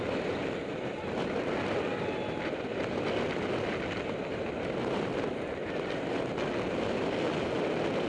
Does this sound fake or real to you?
real